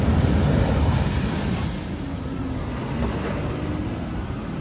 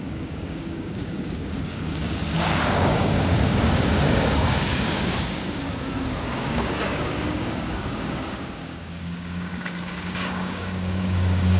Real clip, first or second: first